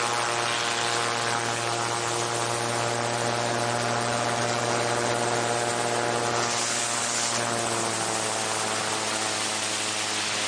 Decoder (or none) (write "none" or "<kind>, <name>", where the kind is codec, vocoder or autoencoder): none